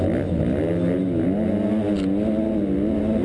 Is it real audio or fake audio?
real